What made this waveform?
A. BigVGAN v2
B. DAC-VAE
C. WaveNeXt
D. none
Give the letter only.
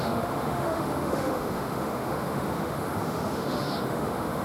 B